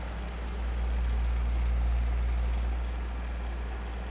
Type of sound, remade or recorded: recorded